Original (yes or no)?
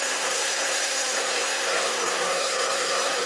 no